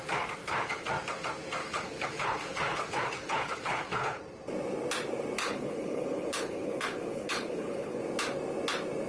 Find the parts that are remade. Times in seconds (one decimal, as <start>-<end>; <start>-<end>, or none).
0.4-0.9; 1.6-4.2; 5.4-8.0